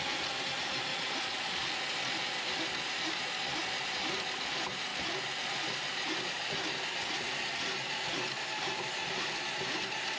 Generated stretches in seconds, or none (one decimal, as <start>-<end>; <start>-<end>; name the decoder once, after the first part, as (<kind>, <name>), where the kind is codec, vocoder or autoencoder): 0.9-1.7 (vocoder, Vocos)